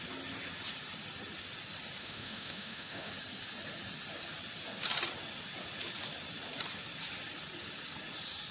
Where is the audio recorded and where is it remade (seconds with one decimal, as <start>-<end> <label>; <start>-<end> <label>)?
0.0-2.0 recorded; 2.0-3.1 remade; 3.1-8.5 recorded